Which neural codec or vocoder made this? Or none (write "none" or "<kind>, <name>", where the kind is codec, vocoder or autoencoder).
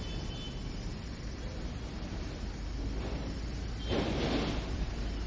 none